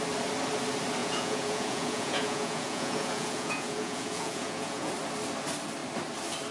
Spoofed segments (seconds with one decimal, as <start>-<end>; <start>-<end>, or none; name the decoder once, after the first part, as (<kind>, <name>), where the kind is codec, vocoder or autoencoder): 1.0-4.9 (vocoder, Vocos)